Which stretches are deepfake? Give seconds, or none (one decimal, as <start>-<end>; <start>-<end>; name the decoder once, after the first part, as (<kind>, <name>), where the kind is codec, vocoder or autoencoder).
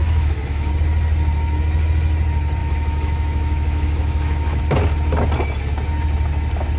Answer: 0.0-0.7 (autoencoder, DAC-VAE); 2.6-4.6